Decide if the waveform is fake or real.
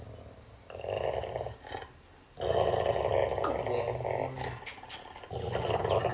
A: real